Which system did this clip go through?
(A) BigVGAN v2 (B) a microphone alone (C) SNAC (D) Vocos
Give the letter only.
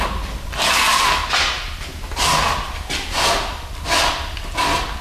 B